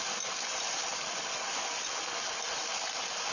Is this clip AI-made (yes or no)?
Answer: no